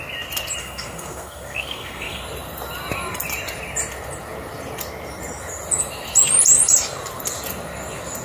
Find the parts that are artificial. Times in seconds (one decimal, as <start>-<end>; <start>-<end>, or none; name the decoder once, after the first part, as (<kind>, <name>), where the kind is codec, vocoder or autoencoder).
0.6-2.2 (codec, SNAC)